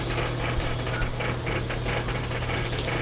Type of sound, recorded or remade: recorded